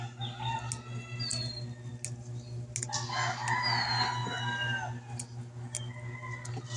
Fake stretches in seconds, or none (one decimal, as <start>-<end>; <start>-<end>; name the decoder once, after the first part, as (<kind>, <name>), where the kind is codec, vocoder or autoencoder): none